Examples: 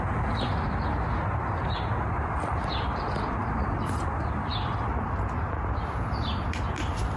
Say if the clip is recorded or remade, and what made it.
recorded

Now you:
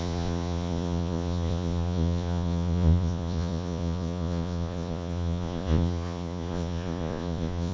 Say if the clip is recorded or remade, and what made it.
remade, vocoder, Vocos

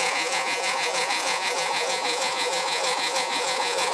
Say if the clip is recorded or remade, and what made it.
remade, vocoder, Vocos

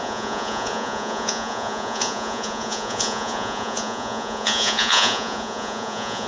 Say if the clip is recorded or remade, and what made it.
remade, vocoder, Vocos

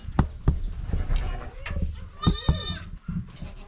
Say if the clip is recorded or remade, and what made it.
recorded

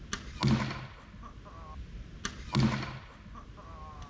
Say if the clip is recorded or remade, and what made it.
recorded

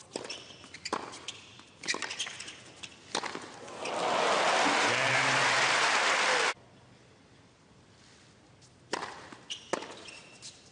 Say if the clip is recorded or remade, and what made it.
recorded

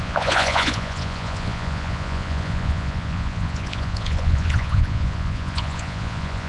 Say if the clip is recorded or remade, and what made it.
remade, vocoder, Vocos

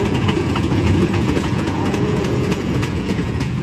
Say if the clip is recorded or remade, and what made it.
remade, vocoder, Vocos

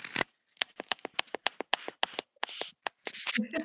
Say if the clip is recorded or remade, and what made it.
recorded